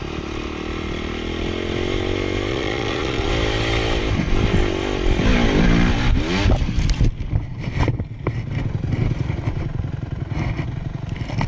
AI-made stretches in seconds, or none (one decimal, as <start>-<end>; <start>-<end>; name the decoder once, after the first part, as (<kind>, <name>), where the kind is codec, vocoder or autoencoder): 2.5-3.3 (vocoder, Vocos)